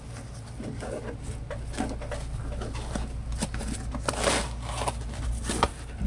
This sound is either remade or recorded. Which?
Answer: recorded